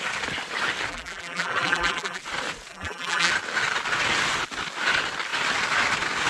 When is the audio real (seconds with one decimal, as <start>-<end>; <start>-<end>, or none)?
0.0-0.9; 2.2-2.7; 3.3-6.3